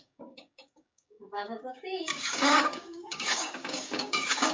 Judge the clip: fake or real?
fake